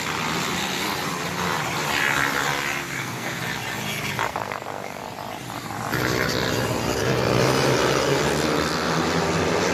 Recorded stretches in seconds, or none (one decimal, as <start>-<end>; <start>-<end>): 0.0-2.8; 3.4-4.3; 5.0-9.7